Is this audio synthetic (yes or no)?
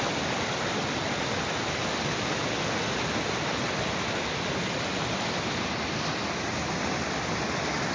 no